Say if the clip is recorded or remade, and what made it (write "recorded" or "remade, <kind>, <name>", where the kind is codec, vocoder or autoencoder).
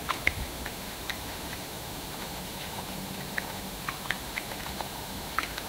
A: remade, autoencoder, DAC-VAE